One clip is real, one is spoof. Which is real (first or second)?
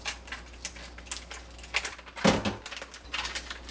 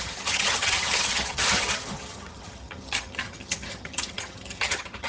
first